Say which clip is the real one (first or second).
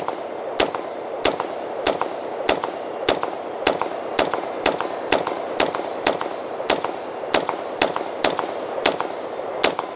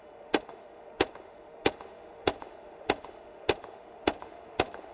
first